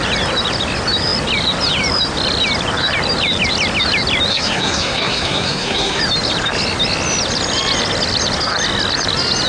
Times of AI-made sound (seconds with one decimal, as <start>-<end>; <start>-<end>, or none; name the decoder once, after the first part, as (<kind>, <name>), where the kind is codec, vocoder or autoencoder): 4.3-6.0 (codec, SNAC)